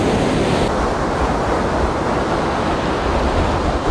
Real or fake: real